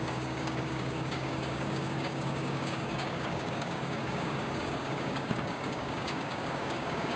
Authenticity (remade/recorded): remade